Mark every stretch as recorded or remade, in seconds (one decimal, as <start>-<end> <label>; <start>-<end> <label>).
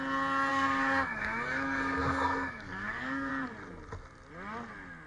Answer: 0.0-0.5 recorded; 0.5-3.3 remade; 3.3-5.1 recorded